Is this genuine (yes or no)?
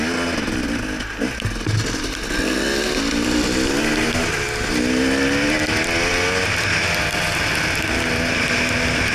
yes